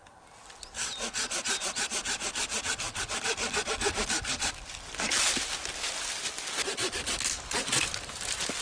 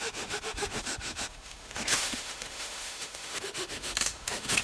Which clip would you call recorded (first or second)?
first